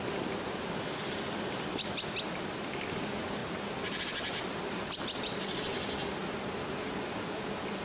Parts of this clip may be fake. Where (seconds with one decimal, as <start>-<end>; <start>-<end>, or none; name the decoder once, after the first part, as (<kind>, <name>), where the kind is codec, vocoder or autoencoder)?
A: none